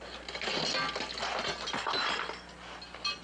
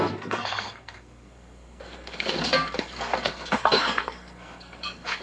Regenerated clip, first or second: second